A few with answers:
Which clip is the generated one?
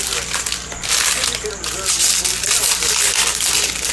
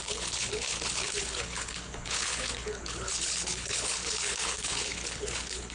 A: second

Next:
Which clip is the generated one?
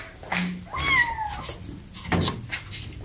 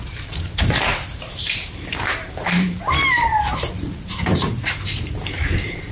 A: second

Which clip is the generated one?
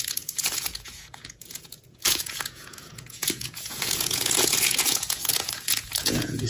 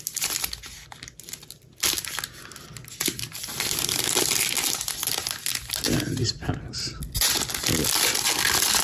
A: first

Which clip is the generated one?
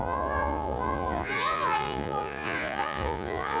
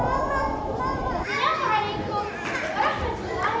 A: first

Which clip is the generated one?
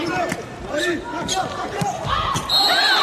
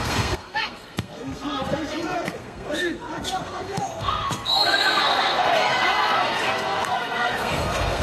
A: second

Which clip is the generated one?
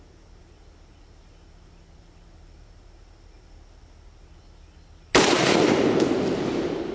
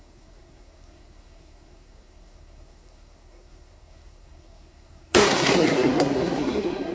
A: second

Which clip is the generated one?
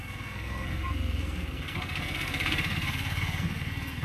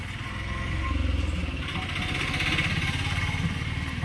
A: first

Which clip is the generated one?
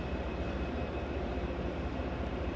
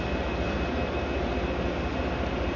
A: first